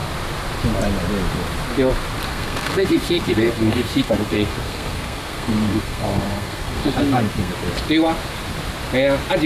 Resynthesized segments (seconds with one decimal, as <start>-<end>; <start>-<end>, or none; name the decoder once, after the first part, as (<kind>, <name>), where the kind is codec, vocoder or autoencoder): 2.3-7.5 (codec, SNAC)